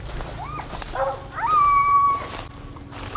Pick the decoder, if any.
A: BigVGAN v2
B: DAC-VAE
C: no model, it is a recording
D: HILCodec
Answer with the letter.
C